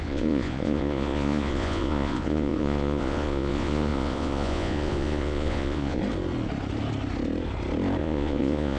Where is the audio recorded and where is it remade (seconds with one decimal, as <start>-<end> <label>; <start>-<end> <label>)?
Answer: 0.0-6.0 remade; 6.0-8.0 recorded; 8.0-8.8 remade